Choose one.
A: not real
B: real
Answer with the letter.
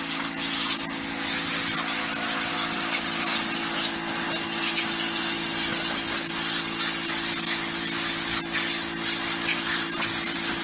B